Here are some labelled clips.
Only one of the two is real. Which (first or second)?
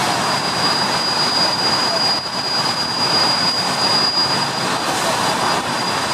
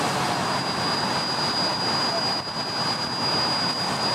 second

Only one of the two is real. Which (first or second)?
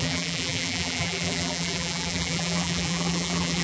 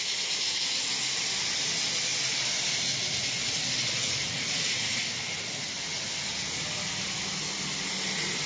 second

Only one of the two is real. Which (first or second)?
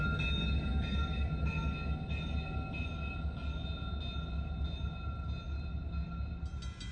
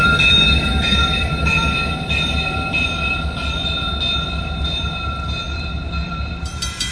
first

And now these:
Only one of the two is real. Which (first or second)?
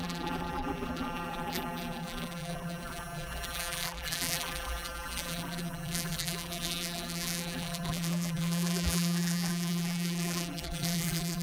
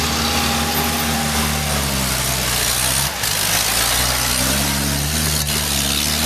second